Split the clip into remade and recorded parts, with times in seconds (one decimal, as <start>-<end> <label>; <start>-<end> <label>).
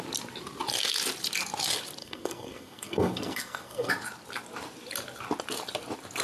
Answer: 0.0-2.0 recorded; 2.0-3.9 remade; 3.9-6.2 recorded